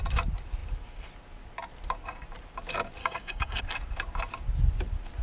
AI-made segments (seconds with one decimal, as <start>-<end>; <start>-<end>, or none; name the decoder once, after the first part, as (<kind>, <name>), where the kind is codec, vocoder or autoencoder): 3.0-3.6 (codec, DAC)